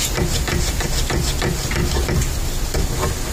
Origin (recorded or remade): recorded